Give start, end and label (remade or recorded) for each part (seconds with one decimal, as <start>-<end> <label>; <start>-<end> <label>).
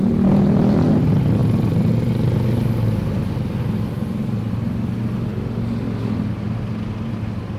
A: 0.0-7.6 recorded